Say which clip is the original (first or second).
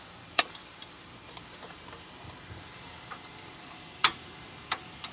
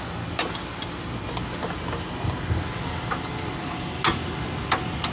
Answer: second